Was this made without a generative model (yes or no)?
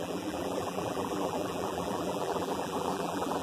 no